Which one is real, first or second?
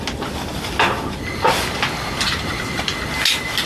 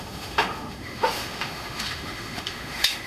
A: first